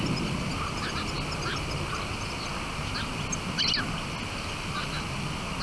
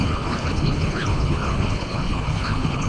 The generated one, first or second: second